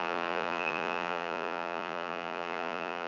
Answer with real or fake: fake